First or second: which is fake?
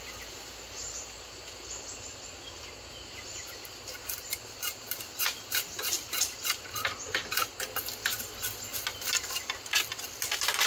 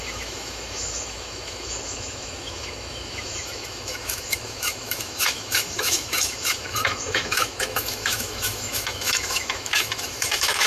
second